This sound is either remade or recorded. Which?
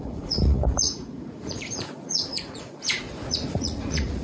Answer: remade